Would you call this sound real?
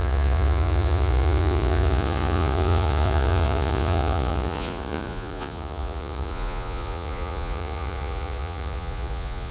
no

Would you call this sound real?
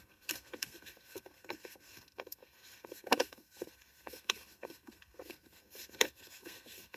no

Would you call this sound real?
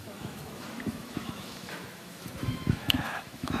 no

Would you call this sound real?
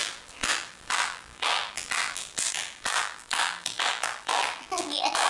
no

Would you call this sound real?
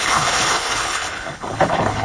no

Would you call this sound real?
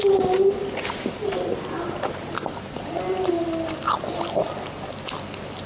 yes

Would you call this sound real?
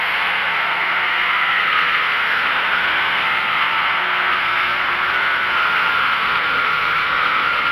no